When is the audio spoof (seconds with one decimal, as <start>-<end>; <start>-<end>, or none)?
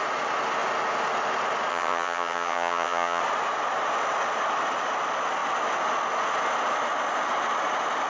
1.7-3.2